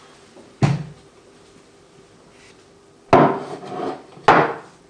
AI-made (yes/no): no